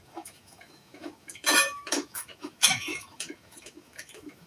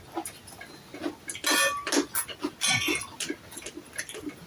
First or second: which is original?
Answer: second